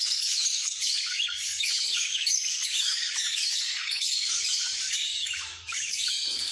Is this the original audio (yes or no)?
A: no